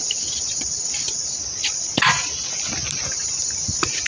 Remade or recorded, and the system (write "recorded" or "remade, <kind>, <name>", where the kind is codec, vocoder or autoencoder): recorded